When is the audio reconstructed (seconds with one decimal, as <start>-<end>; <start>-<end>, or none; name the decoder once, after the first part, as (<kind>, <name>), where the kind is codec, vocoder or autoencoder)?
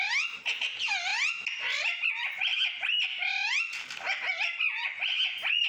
none